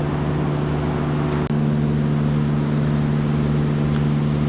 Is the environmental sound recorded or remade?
recorded